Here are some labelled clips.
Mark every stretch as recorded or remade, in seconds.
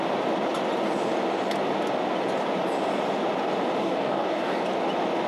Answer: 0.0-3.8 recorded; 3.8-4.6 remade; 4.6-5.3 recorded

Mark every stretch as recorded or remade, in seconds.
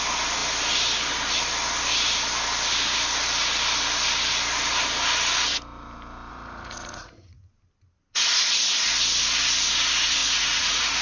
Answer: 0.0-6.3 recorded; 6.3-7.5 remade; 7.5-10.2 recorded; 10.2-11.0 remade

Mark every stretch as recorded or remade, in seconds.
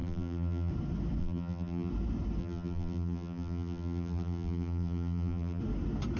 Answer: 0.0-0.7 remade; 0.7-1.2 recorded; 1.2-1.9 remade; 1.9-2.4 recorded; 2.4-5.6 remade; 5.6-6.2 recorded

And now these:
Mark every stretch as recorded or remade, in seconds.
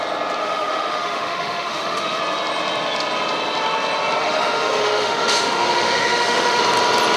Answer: 0.0-0.4 recorded; 0.4-2.2 remade; 2.2-4.2 recorded; 4.2-6.6 remade; 6.6-7.2 recorded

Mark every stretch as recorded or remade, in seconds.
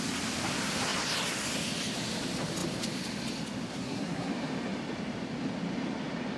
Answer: 0.0-3.7 recorded; 3.7-4.3 remade; 4.3-6.4 recorded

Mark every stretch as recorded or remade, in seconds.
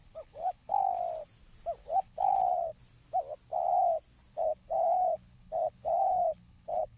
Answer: 0.0-1.0 remade; 1.0-1.8 recorded; 1.8-2.8 remade; 2.8-4.3 recorded; 4.3-7.0 remade